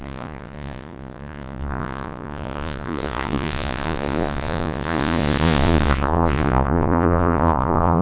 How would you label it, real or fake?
fake